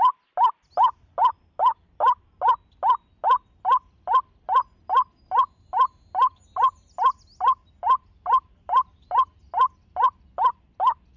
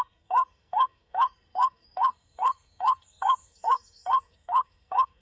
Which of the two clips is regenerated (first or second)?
second